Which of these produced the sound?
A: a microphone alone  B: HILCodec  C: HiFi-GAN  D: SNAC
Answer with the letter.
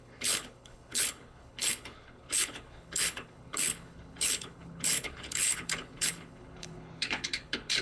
B